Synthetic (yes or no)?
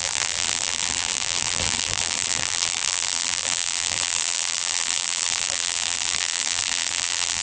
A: yes